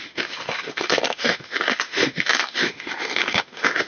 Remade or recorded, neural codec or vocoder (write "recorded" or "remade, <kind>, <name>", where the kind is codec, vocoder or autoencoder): remade, autoencoder, DAC-VAE